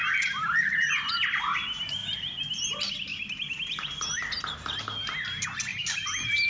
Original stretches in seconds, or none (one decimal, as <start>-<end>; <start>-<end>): 0.0-2.0; 2.7-5.7